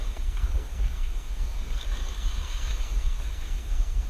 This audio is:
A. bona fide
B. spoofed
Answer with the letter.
B